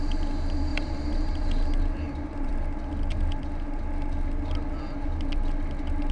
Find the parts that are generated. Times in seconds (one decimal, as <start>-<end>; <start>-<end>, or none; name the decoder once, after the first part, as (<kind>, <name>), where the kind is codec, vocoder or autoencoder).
0.7-2.5 (vocoder, BigVGAN v2)